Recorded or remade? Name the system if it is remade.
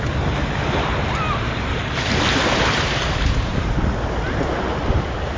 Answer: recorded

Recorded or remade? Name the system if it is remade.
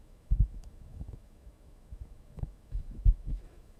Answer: remade, autoencoder, DAC-VAE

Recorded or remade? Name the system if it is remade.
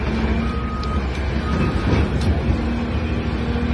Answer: recorded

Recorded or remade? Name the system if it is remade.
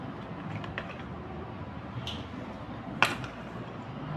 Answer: recorded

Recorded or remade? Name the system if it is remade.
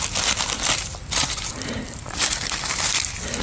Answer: recorded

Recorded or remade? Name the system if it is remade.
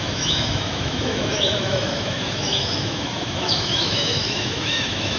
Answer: remade, autoencoder, DAC-VAE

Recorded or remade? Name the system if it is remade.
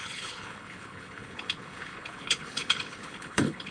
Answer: remade, codec, HILCodec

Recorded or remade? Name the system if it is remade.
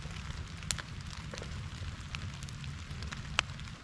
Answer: recorded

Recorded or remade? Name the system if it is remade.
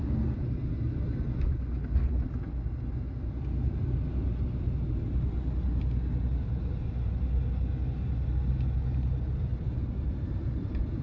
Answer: recorded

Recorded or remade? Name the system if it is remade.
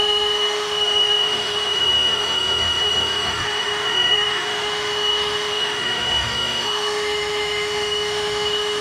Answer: remade, autoencoder, DAC-VAE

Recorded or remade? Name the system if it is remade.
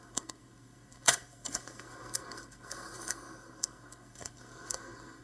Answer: remade, codec, SNAC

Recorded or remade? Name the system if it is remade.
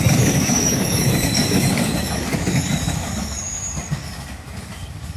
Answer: remade, codec, DAC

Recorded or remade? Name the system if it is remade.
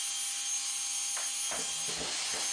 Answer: recorded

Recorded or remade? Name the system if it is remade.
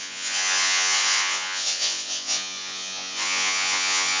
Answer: remade, vocoder, Vocos